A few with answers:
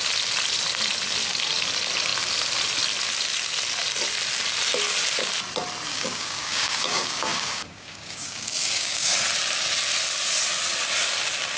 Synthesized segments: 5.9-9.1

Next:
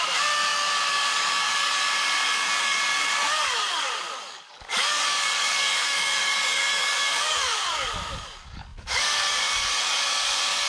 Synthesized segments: 0.0-10.7

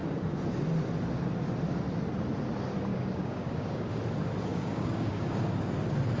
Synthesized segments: 2.9-3.9; 4.5-5.3

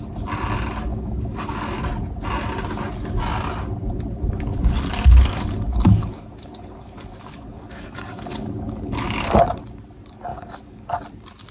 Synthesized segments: 0.9-1.8; 4.5-9.3; 10.3-11.0

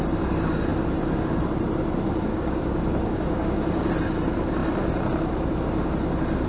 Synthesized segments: 2.3-3.9

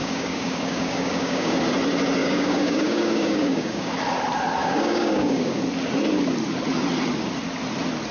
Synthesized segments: 0.0-1.6; 2.2-3.9; 4.6-5.6